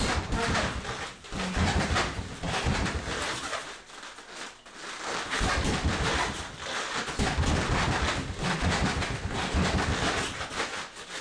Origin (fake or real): real